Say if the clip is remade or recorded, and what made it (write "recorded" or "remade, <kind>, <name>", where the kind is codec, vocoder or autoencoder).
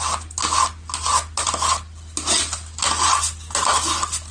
recorded